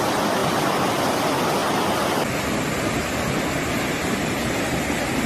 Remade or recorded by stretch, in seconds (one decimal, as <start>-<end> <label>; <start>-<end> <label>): 0.0-5.3 recorded